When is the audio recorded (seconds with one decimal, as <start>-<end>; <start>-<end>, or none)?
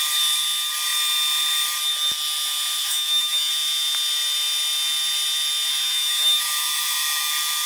0.0-2.8; 3.5-5.7; 7.3-7.7